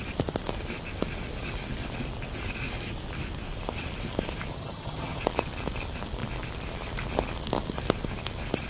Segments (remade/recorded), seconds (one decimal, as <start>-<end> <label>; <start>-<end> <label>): 0.0-4.5 recorded; 4.5-5.2 remade; 5.2-8.7 recorded